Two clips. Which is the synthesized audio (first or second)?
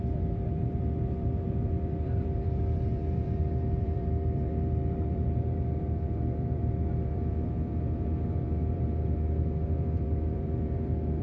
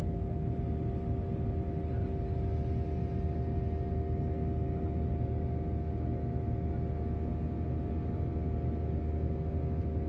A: first